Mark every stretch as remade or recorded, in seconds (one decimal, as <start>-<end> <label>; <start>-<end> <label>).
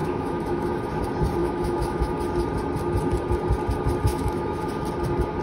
0.0-0.7 remade; 0.7-1.4 recorded; 1.4-2.1 remade; 2.1-4.1 recorded; 4.1-4.6 remade; 4.6-5.4 recorded